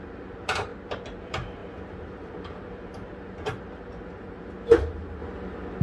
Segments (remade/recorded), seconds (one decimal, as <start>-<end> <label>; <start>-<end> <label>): 0.0-0.7 remade; 0.7-1.2 recorded; 1.2-5.2 remade; 5.2-5.8 recorded